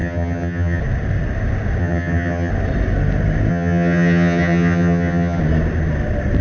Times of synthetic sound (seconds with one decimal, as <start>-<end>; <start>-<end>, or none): 0.0-0.8; 1.8-2.5; 3.5-5.4